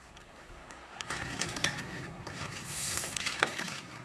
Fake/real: fake